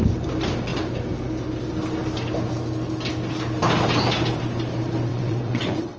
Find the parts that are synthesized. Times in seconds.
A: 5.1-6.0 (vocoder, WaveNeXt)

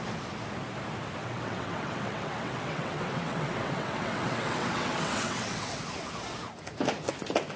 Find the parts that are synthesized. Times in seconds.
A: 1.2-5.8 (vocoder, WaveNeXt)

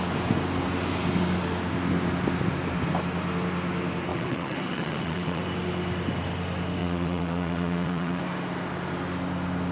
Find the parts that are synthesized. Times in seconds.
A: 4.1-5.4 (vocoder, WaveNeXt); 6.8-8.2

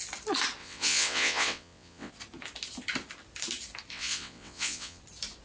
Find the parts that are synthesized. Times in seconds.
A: 0.6-2.1 (vocoder, WaveNeXt); 3.9-5.0